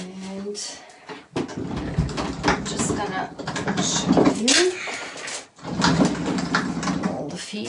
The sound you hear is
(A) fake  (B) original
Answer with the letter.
B